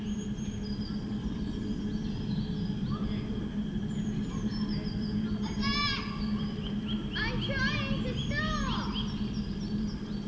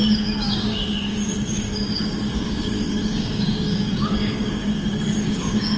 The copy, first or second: second